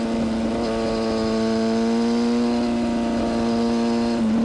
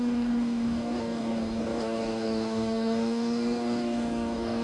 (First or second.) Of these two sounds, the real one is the first